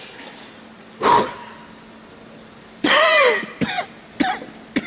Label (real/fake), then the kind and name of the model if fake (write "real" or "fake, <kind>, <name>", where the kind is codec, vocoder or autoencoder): real